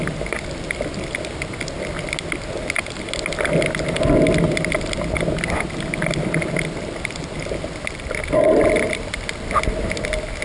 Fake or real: real